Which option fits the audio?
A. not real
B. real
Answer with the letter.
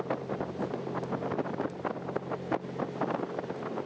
B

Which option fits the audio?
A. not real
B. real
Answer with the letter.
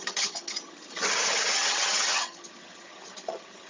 A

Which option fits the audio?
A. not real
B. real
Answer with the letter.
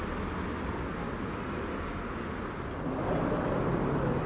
B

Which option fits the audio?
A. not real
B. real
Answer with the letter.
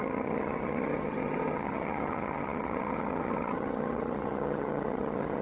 A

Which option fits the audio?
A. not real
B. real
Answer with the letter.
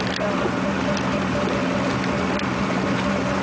B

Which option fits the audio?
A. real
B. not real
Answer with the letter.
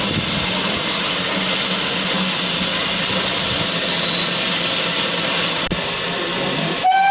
A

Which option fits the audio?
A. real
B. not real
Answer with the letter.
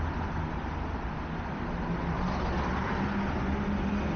A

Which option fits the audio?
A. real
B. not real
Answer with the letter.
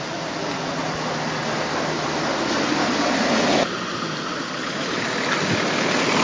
A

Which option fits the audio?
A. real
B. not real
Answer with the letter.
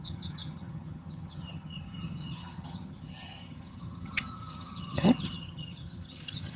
B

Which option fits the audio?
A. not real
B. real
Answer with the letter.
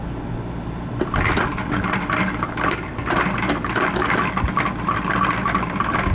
B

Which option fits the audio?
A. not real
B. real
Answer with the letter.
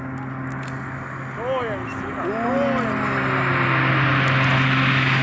B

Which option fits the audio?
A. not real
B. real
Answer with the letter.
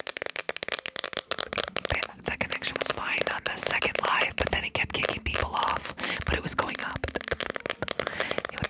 B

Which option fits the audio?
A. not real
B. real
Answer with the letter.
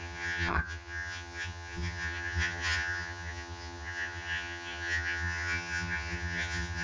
A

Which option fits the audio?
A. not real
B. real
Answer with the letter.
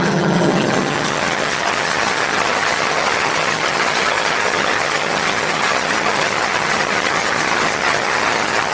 A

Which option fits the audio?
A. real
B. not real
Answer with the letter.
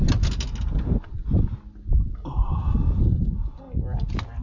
A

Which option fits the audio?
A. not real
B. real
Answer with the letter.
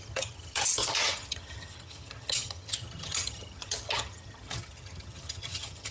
A